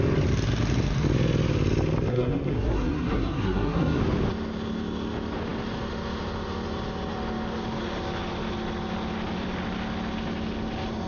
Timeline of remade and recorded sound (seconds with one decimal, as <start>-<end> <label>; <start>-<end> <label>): 0.0-2.1 recorded; 2.1-4.0 remade; 4.0-11.1 recorded